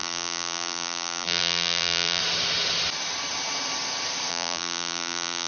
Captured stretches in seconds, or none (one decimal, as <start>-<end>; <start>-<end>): 2.2-4.3